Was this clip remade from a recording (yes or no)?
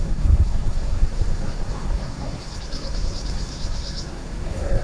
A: yes